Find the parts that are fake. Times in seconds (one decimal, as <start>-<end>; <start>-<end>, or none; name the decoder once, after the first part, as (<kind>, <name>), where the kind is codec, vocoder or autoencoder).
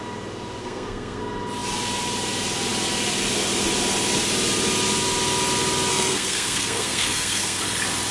0.6-1.2 (codec, SNAC); 5.9-7.6